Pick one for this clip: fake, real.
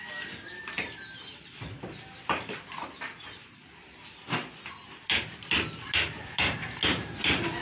real